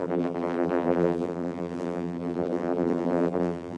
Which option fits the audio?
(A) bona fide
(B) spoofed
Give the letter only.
B